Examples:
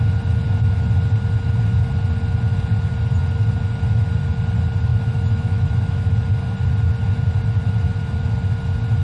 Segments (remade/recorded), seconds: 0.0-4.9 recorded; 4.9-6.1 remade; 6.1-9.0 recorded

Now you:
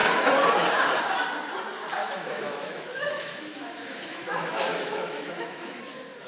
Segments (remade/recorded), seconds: 0.0-2.0 recorded; 2.0-5.8 remade; 5.8-6.3 recorded

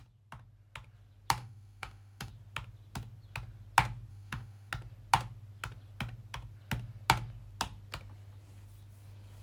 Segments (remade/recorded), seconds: 0.0-1.4 recorded; 1.4-2.3 remade; 2.3-4.1 recorded; 4.1-4.7 remade; 4.7-9.4 recorded